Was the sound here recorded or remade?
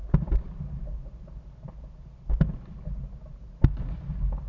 recorded